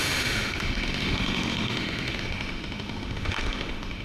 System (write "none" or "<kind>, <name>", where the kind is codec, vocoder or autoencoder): autoencoder, DAC-VAE